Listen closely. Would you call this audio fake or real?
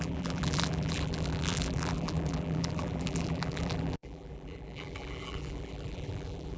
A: fake